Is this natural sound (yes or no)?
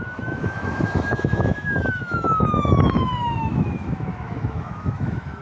no